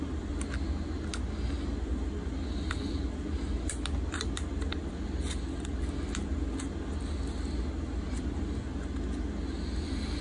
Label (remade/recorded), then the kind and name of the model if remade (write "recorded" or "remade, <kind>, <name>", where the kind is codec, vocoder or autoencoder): recorded